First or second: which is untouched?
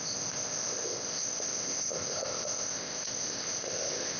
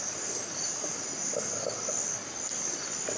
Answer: second